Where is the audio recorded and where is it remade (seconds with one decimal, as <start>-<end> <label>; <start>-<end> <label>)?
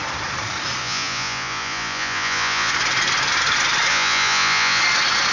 0.0-0.8 recorded; 0.8-2.7 remade; 2.7-3.9 recorded; 3.9-4.8 remade; 4.8-5.3 recorded